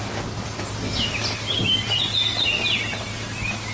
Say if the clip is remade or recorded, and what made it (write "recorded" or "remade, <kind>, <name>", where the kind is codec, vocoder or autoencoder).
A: recorded